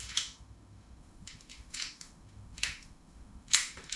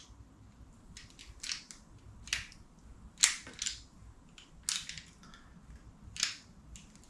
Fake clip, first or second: first